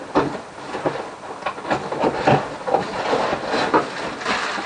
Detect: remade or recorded recorded